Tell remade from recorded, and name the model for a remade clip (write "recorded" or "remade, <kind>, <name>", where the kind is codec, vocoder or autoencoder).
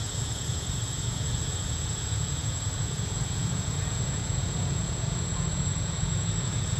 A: remade, vocoder, Vocos